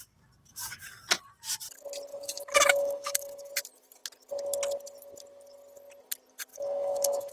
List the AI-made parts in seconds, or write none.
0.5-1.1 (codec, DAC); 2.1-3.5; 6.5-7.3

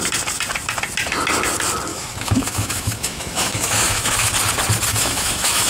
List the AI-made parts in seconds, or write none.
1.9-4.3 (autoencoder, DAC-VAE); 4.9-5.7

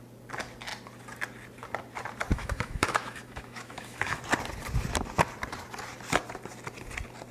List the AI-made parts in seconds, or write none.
2.3-4.2 (autoencoder, DAC-VAE)

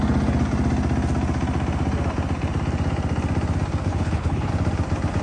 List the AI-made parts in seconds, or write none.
3.9-4.5 (codec, HILCodec)

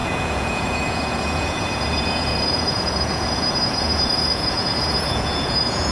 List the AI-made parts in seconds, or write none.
0.0-5.9 (vocoder, Vocos)

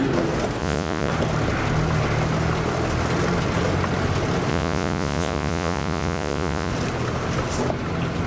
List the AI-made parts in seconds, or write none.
0.6-1.1 (vocoder, Vocos); 4.5-6.7